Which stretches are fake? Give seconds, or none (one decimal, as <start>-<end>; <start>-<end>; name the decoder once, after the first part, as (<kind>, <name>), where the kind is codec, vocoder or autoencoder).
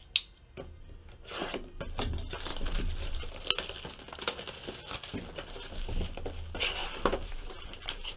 2.5-3.3 (vocoder, BigVGAN v2); 6.8-8.2